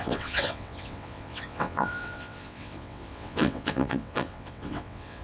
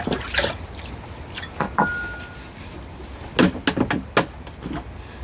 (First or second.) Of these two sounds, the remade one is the first